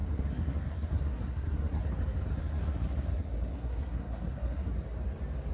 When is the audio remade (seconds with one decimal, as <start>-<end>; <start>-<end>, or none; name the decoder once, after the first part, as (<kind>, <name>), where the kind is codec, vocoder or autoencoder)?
0.0-1.8 (codec, SNAC); 2.4-4.7